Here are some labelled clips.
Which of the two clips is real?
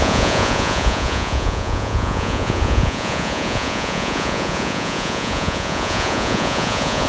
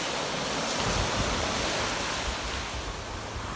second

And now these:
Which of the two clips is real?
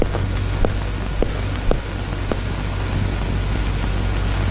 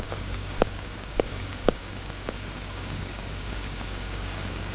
first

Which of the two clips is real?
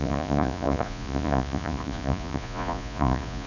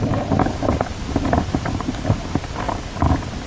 second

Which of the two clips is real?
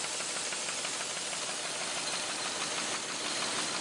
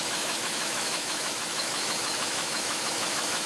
first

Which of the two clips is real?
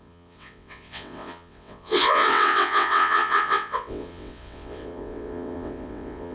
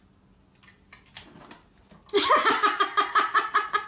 second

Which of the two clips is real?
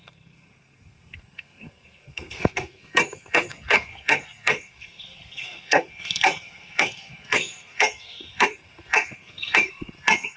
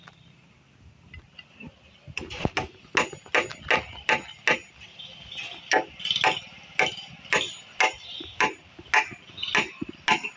second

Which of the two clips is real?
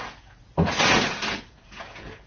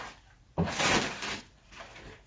second